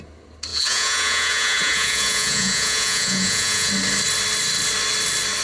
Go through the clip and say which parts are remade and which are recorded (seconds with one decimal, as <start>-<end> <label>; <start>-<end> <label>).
0.0-0.5 recorded; 0.5-3.7 remade; 3.7-5.4 recorded